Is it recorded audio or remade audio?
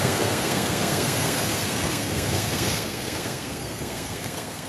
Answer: remade